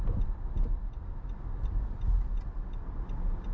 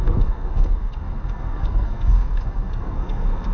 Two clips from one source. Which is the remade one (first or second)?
second